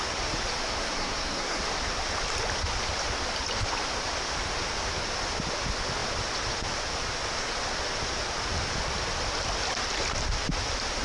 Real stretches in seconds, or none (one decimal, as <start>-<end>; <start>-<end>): 0.0-0.8; 1.6-11.0